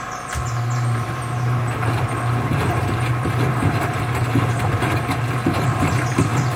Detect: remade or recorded remade